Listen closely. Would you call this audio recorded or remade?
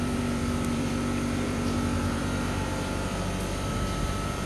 remade